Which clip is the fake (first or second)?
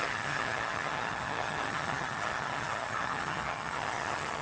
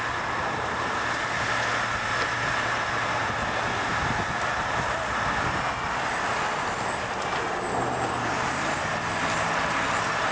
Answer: first